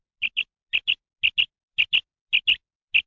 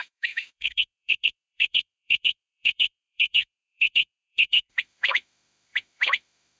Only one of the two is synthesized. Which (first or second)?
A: second